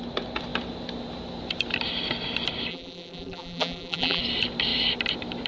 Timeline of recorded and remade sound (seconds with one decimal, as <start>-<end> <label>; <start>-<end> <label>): 0.0-2.7 recorded; 2.7-4.2 remade; 4.2-5.5 recorded

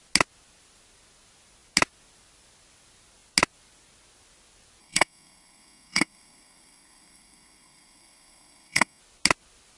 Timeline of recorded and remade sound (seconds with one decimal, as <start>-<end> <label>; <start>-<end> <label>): 0.0-4.8 recorded; 4.8-9.0 remade; 9.0-9.8 recorded

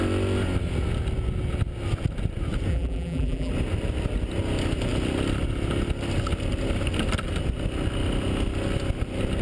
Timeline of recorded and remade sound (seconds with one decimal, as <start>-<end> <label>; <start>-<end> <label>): 0.0-2.7 recorded; 2.7-3.5 remade; 3.5-9.4 recorded

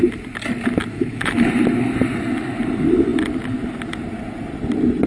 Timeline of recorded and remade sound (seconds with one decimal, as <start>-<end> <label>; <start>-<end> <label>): 0.0-0.9 recorded; 0.9-1.5 remade; 1.5-5.1 recorded

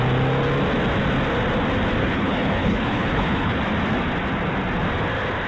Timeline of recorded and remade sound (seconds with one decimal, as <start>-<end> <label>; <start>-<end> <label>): 0.0-2.0 recorded; 2.0-3.6 remade; 3.6-5.5 recorded

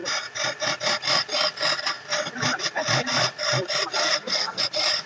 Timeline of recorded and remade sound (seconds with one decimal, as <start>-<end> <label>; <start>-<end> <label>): 0.0-4.0 recorded; 4.0-4.6 remade; 4.6-5.1 recorded

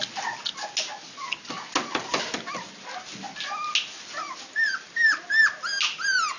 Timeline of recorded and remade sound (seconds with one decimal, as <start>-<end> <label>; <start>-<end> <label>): 0.0-6.4 recorded

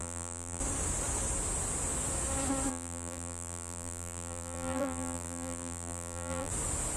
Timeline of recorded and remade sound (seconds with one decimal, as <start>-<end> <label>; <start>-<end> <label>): 0.0-0.6 remade; 0.6-2.7 recorded; 2.7-6.5 remade; 6.5-7.0 recorded